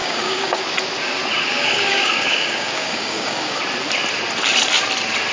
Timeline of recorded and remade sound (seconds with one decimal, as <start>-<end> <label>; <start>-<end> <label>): 0.0-0.6 remade; 0.6-1.5 recorded; 1.5-3.6 remade; 3.6-5.3 recorded